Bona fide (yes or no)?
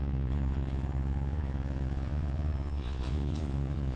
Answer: no